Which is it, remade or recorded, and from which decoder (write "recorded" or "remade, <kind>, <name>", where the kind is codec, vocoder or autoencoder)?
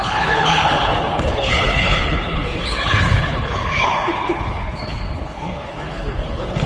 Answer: remade, codec, HILCodec